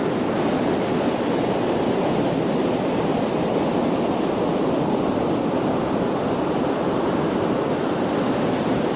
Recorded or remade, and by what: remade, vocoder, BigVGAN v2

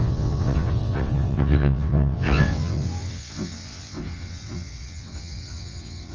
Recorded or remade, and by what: remade, vocoder, WaveNeXt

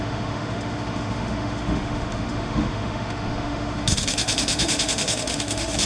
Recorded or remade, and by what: remade, autoencoder, DAC-VAE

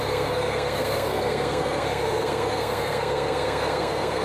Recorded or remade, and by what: remade, codec, SNAC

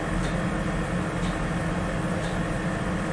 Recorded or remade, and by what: recorded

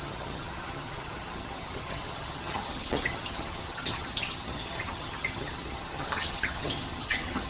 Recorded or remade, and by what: remade, vocoder, HiFi-GAN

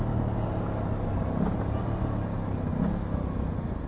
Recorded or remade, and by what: recorded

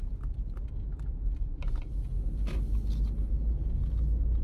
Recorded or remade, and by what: recorded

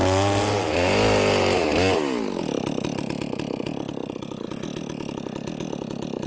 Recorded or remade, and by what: recorded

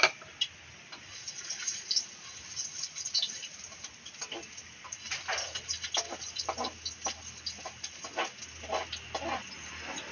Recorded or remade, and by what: recorded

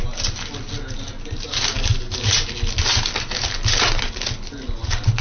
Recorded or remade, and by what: recorded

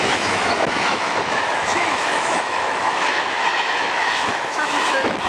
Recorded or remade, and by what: remade, autoencoder, DAC-VAE